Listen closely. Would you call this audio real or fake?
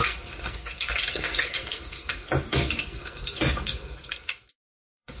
fake